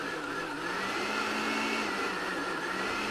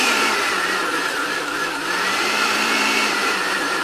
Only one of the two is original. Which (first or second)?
first